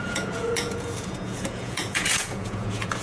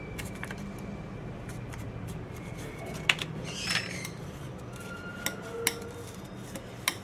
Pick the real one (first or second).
second